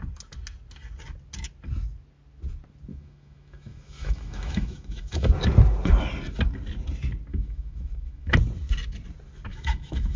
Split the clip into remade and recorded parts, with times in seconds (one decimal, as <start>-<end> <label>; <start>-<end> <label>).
0.0-2.9 recorded; 2.9-5.3 remade; 5.3-7.3 recorded; 7.3-8.3 remade; 8.3-9.5 recorded; 9.5-10.2 remade